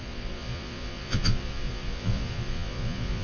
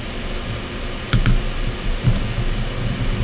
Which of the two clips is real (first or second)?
second